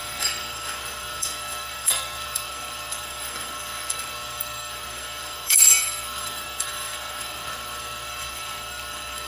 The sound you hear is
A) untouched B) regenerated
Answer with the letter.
B